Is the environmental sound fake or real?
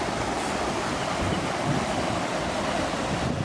real